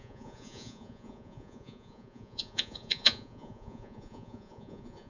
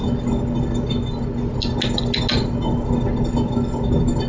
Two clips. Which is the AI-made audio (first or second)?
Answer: first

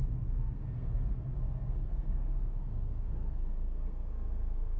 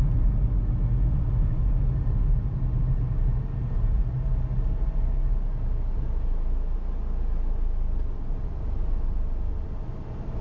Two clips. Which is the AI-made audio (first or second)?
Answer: first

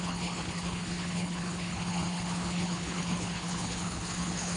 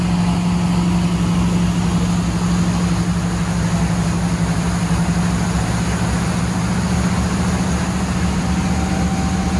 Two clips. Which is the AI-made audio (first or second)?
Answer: first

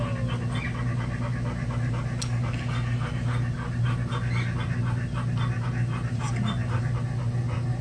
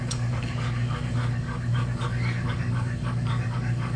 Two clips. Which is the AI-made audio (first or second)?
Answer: second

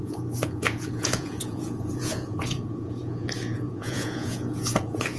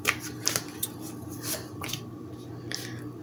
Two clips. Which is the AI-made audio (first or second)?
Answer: first